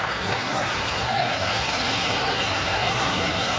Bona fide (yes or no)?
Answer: no